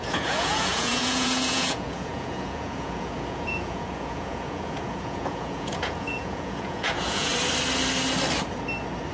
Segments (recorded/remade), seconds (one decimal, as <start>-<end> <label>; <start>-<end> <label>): 0.0-7.3 remade; 7.3-9.1 recorded